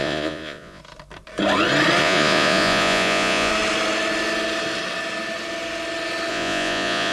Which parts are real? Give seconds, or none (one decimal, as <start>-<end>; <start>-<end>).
0.8-2.0; 3.5-6.3